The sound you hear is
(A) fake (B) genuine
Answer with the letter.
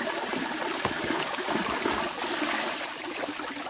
B